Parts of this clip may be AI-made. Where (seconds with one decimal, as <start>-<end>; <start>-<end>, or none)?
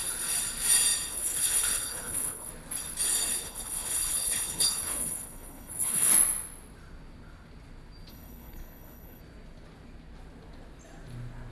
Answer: 1.1-2.5; 3.3-6.1; 8.1-9.2